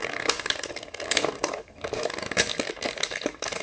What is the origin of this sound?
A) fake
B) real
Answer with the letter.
A